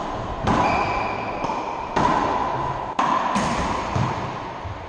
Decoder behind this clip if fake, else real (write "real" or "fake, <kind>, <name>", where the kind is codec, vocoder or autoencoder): real